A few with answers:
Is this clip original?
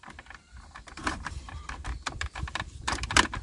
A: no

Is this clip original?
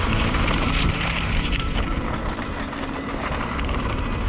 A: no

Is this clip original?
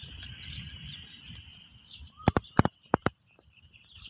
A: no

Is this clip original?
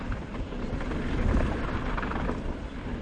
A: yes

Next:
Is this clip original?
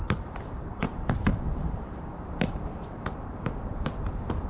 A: no